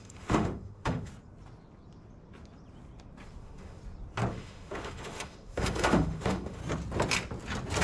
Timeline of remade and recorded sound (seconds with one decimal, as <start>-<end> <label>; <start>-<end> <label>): 0.0-1.1 remade; 1.1-3.4 recorded; 3.4-3.8 remade; 3.8-4.3 recorded; 4.3-6.6 remade; 6.6-7.8 recorded

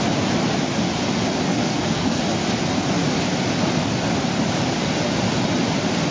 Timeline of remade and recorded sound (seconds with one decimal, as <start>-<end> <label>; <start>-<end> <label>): 0.0-1.5 recorded; 1.5-2.2 remade; 2.2-6.1 recorded